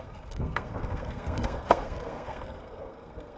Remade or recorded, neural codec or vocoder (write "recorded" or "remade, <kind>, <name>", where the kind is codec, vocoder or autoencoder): remade, codec, SNAC